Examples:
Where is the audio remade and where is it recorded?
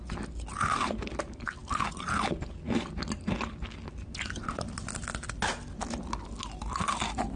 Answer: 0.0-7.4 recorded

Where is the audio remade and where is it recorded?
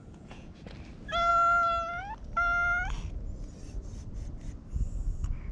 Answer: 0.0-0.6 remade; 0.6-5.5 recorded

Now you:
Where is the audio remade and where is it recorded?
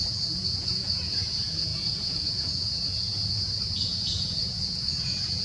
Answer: 0.0-5.4 remade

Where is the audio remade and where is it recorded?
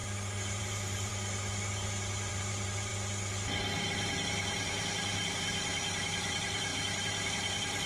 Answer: 0.0-0.6 recorded; 0.6-1.1 remade; 1.1-2.3 recorded; 2.3-2.9 remade; 2.9-3.8 recorded; 3.8-7.9 remade